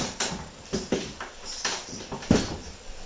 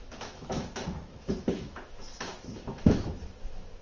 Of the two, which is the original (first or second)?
first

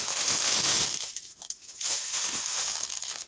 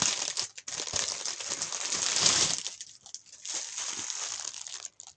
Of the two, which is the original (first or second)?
second